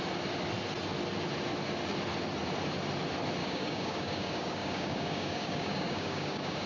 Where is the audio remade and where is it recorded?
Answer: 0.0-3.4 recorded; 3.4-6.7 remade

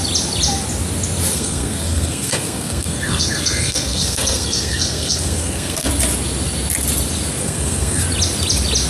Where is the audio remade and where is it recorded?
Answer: 0.0-1.3 recorded; 1.3-5.9 remade; 5.9-7.4 recorded; 7.4-8.0 remade; 8.0-8.9 recorded